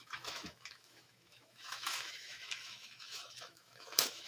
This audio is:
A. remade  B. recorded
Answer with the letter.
A